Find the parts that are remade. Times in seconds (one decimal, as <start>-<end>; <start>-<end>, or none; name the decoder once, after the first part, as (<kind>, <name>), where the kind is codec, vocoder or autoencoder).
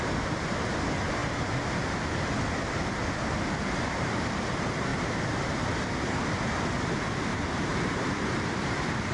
7.3-8.0 (vocoder, BigVGAN v2)